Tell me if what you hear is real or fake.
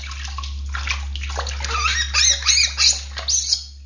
real